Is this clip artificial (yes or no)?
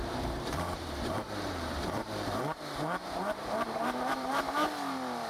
yes